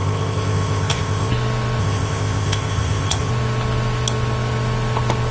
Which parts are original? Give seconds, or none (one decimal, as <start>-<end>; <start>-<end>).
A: 1.3-1.8; 3.3-5.3